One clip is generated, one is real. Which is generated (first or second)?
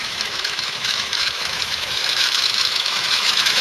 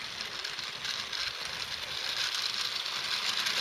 first